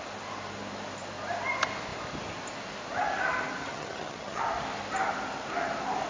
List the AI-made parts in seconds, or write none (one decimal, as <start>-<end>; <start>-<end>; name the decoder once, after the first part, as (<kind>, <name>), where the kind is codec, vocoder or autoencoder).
3.6-4.4 (vocoder, HiFi-GAN)